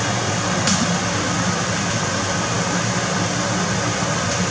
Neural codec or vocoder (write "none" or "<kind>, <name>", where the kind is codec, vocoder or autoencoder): none